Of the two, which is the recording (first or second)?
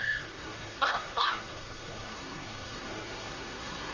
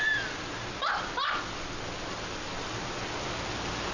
second